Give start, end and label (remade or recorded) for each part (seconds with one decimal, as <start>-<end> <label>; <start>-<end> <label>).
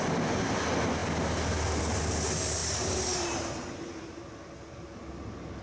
0.0-2.6 recorded; 2.6-4.2 remade; 4.2-5.6 recorded